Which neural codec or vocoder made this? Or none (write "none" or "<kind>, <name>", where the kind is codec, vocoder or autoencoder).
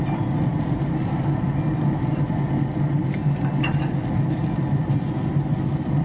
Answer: none